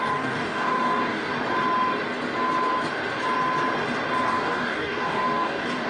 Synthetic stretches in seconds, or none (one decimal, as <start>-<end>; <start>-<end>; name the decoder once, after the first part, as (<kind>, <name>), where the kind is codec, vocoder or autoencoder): 0.0-1.3 (codec, DAC); 4.2-5.9